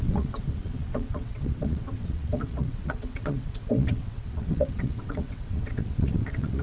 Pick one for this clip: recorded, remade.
remade